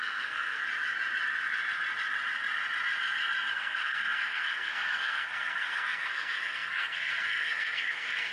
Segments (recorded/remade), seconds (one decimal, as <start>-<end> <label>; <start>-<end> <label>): 0.0-0.6 remade; 0.6-3.5 recorded; 3.5-8.3 remade